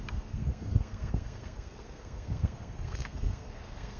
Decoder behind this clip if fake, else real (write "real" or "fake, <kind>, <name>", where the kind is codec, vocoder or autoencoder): fake, codec, SNAC